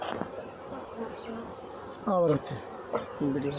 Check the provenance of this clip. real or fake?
real